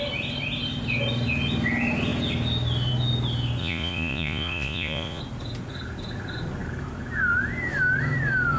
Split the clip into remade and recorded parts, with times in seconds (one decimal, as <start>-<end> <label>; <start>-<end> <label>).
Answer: 0.0-3.6 recorded; 3.6-5.2 remade; 5.2-8.6 recorded